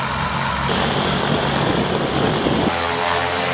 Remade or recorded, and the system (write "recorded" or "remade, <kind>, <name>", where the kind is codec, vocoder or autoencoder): recorded